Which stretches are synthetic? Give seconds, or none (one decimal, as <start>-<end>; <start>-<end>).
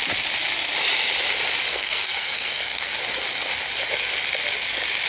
1.7-2.9